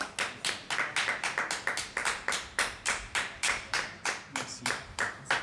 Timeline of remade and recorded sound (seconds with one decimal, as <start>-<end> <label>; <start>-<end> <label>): 0.0-2.0 recorded; 2.0-5.4 remade

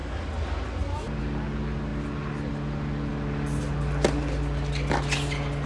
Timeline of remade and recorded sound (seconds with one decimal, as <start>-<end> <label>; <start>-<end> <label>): 0.0-5.7 recorded

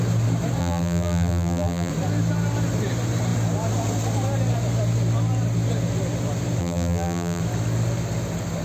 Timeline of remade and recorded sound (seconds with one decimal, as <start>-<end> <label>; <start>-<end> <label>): 0.0-0.6 recorded; 0.6-1.9 remade; 1.9-6.6 recorded; 6.6-7.4 remade; 7.4-8.6 recorded

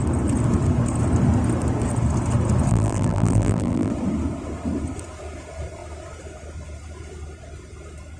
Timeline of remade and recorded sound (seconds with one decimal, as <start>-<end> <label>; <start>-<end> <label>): 0.0-2.7 recorded; 2.7-3.9 remade; 3.9-8.2 recorded